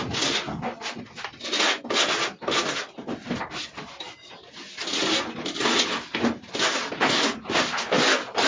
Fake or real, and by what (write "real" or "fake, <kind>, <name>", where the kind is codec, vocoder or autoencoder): real